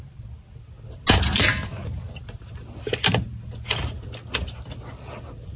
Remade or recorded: recorded